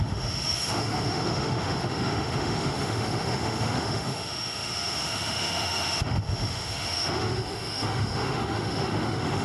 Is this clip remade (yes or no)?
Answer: yes